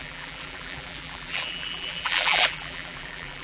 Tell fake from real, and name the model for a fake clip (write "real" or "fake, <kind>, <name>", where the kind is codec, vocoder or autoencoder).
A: fake, vocoder, BigVGAN v2